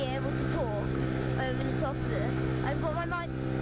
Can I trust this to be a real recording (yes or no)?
yes